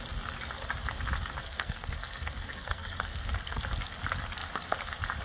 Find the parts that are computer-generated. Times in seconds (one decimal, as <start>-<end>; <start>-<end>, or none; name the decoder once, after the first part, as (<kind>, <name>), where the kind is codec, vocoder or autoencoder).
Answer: 1.4-3.6 (codec, SNAC)